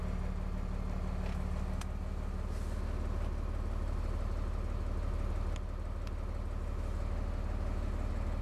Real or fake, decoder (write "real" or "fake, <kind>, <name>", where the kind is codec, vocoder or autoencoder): real